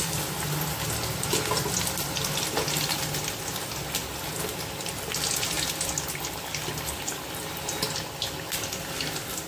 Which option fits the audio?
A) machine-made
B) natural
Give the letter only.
B